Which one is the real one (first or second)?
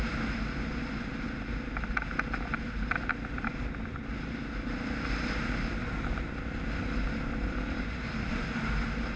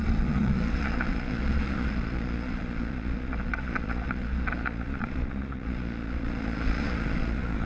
first